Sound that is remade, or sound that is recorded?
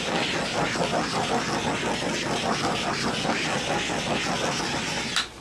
recorded